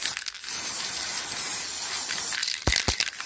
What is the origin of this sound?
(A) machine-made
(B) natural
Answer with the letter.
B